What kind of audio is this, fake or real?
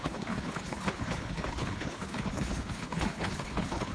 fake